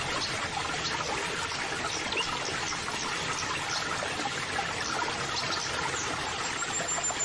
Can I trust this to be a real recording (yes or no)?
yes